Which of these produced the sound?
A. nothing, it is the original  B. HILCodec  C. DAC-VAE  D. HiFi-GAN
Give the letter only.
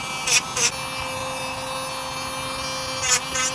A